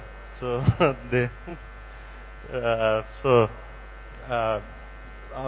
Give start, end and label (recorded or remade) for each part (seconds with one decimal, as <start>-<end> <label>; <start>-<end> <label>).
0.0-5.5 recorded